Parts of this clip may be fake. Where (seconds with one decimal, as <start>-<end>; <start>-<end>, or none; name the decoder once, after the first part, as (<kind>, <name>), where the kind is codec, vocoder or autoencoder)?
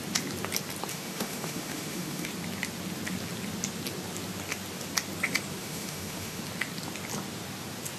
0.9-2.3 (autoencoder, DAC-VAE); 5.6-6.4